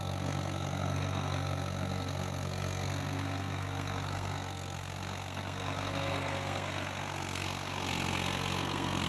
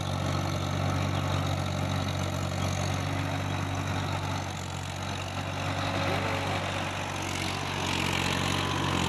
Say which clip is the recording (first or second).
second